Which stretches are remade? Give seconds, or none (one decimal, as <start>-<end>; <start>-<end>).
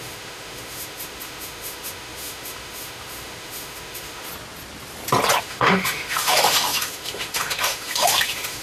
0.0-4.3; 5.4-8.6